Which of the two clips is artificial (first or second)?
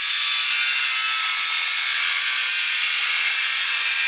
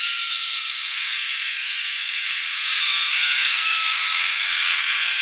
second